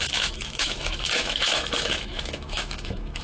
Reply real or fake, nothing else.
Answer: fake